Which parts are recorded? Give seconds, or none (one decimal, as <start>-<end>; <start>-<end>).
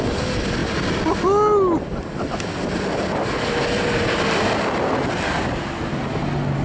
0.0-6.6